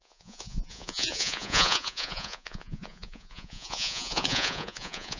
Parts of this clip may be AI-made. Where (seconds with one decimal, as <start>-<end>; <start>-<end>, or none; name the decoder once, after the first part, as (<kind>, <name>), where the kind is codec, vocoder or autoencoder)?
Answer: 0.0-5.2 (vocoder, Vocos)